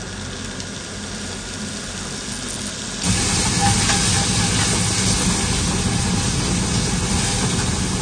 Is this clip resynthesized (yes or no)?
no